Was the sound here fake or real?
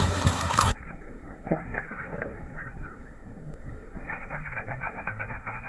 fake